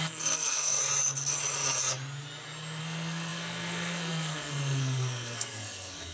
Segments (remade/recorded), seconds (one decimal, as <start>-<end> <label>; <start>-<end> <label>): 0.0-0.8 remade; 0.8-2.8 recorded; 2.8-6.1 remade